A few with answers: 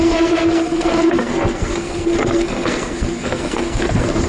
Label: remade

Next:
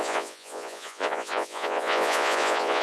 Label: remade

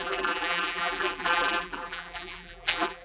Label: remade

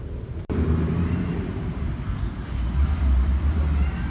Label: remade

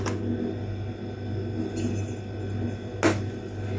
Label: recorded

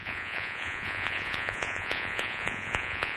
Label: remade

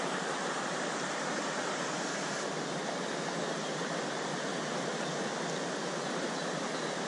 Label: recorded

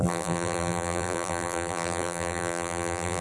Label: remade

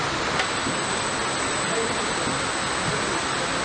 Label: recorded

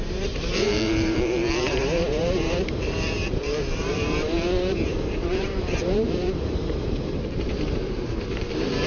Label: remade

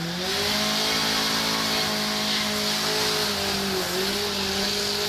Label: recorded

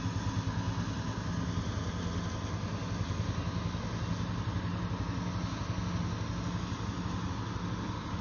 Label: recorded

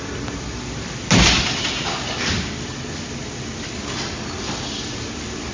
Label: recorded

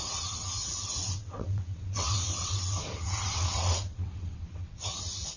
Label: remade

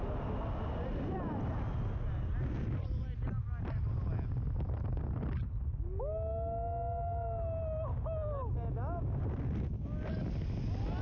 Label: recorded